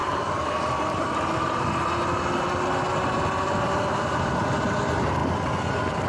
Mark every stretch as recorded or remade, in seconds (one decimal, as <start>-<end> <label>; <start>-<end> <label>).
0.0-1.1 remade; 1.1-2.9 recorded; 2.9-4.6 remade; 4.6-6.1 recorded